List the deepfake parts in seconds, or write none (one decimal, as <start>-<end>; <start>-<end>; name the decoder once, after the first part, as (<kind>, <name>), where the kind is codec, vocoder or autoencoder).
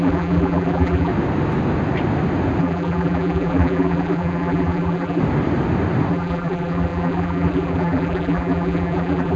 0.0-1.1 (vocoder, BigVGAN v2); 2.6-5.2; 6.1-9.4